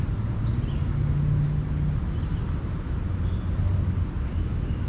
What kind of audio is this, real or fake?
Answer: real